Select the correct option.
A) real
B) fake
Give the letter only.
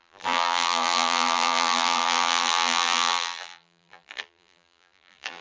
B